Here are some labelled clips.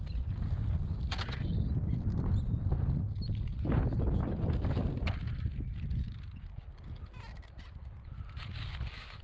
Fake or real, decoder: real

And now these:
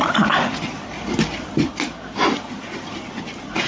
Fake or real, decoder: real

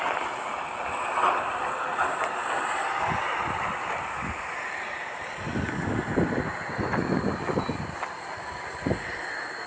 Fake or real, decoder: real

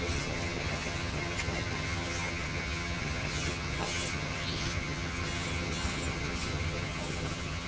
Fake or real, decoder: fake, vocoder, HiFi-GAN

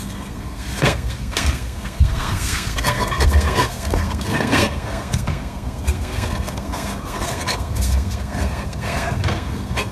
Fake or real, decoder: fake, codec, SNAC